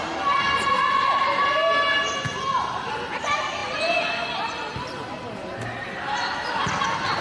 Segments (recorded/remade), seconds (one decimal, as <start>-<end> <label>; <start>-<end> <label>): 0.0-7.2 recorded

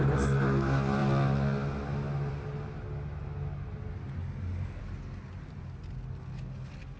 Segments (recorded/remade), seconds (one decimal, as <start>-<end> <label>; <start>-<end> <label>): 0.0-4.2 recorded; 4.2-4.8 remade; 4.8-7.0 recorded